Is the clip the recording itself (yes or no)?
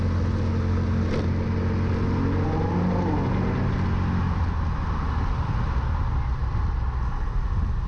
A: yes